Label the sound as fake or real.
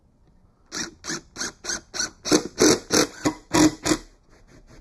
real